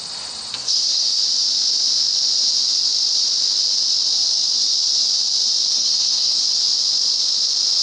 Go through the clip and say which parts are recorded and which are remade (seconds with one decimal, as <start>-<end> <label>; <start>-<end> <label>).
0.0-0.5 recorded; 0.5-1.2 remade; 1.2-5.7 recorded; 5.7-6.4 remade; 6.4-7.8 recorded

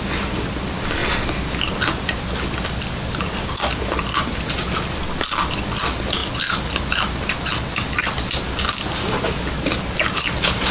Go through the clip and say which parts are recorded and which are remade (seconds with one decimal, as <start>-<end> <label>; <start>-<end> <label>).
0.0-10.7 recorded

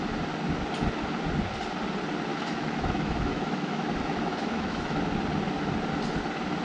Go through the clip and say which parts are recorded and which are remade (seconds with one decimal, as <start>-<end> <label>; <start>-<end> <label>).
0.0-2.3 recorded; 2.3-5.0 remade; 5.0-6.6 recorded

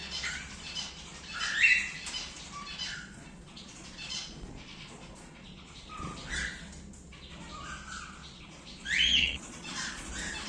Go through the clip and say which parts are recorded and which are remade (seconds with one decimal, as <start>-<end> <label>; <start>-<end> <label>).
0.0-2.7 recorded; 2.7-5.9 remade; 5.9-8.2 recorded; 8.2-10.1 remade; 10.1-10.5 recorded

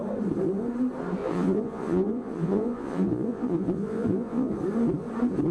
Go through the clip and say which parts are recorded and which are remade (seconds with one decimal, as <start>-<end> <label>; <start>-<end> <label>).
0.0-1.2 recorded; 1.2-4.5 remade; 4.5-5.5 recorded

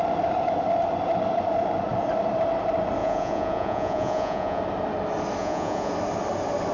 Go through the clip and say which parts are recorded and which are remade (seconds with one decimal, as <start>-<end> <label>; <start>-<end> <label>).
0.0-3.0 recorded; 3.0-4.6 remade; 4.6-5.4 recorded; 5.4-5.9 remade; 5.9-6.7 recorded

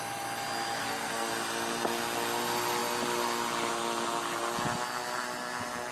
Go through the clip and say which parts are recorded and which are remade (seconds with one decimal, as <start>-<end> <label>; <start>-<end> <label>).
0.0-0.8 recorded; 0.8-1.3 remade; 1.3-5.9 recorded